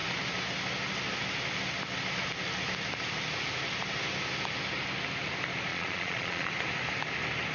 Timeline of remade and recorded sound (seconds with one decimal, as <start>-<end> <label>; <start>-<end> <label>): 0.0-5.7 recorded; 5.7-6.5 remade; 6.5-7.5 recorded